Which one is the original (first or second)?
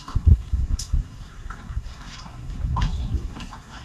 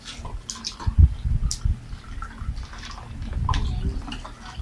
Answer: second